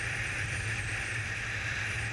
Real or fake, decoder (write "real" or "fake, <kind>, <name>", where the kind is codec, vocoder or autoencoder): real